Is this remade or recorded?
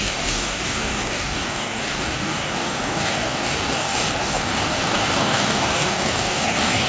remade